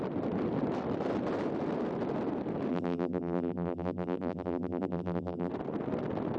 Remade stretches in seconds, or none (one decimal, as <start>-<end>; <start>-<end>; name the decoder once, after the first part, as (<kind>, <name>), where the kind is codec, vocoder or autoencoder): 2.7-5.5 (vocoder, BigVGAN v2)